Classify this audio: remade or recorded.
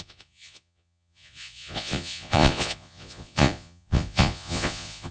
remade